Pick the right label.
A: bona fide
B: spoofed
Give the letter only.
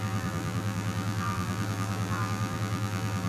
B